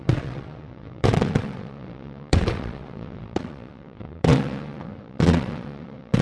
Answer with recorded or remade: remade